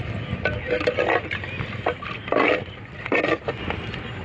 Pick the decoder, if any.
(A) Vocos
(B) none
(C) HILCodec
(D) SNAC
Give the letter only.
B